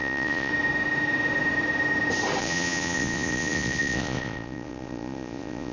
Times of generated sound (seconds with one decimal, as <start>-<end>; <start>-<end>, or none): 0.0-0.5; 2.4-5.7